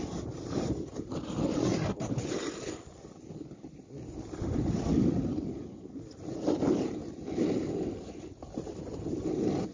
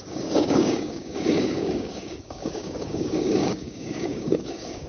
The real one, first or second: first